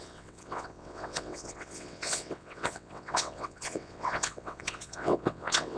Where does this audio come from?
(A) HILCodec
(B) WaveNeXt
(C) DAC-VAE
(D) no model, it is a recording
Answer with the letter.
B